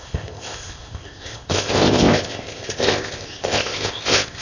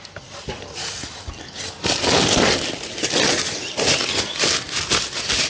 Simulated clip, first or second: first